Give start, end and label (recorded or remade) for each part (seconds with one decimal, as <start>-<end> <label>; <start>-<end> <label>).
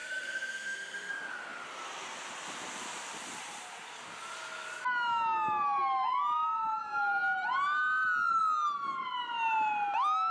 0.0-1.1 remade; 1.1-10.3 recorded